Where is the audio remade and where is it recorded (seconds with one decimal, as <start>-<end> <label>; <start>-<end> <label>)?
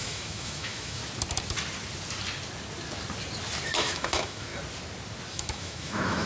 0.0-1.0 remade; 1.0-3.7 recorded; 3.7-4.5 remade; 4.5-5.3 recorded; 5.3-6.3 remade